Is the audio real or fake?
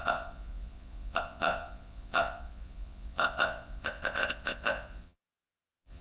fake